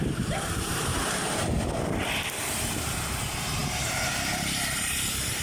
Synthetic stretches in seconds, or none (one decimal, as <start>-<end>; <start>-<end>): 0.0-0.9; 2.6-5.4